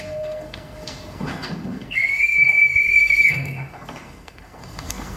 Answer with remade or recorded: remade